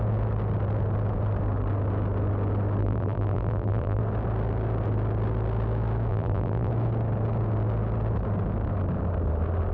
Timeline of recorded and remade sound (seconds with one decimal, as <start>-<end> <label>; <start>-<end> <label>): 0.0-2.8 recorded; 2.8-4.0 remade; 4.0-6.1 recorded; 6.1-6.7 remade; 6.7-9.7 recorded